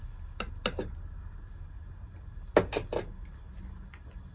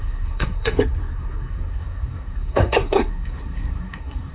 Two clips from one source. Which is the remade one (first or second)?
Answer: second